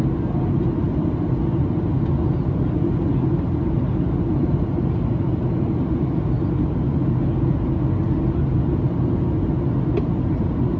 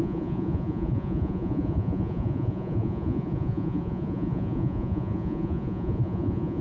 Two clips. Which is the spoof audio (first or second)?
second